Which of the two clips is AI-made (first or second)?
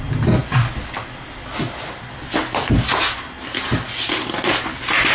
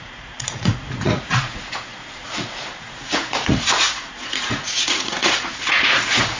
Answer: second